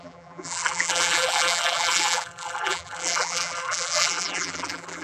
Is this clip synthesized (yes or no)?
yes